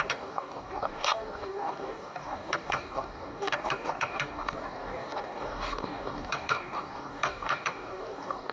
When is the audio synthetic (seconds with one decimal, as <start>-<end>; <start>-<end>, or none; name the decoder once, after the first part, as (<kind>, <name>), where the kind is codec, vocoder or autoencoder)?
0.0-8.5 (codec, DAC)